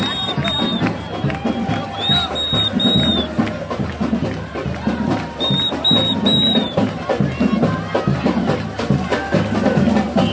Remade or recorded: recorded